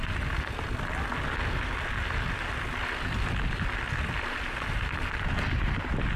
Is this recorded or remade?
recorded